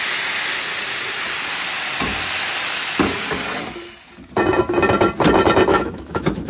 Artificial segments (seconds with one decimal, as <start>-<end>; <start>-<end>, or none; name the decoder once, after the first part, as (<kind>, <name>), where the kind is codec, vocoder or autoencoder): 5.7-6.5 (autoencoder, DAC-VAE)